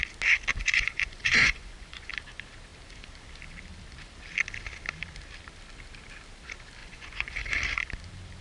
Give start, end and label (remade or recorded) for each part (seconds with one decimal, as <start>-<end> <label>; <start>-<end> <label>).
0.0-0.5 recorded; 0.5-2.1 remade; 2.1-6.8 recorded; 6.8-7.6 remade; 7.6-8.4 recorded